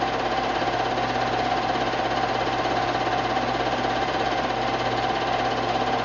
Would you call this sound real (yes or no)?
yes